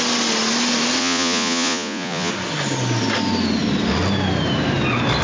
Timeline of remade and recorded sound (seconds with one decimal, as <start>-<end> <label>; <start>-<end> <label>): 0.0-1.0 recorded; 1.0-2.3 remade; 2.3-5.2 recorded